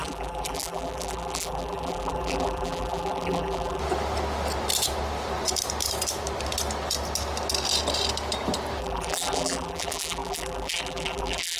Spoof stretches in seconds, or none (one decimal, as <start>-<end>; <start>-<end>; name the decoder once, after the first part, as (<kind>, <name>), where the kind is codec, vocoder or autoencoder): 0.0-3.8 (vocoder, BigVGAN v2); 8.8-11.6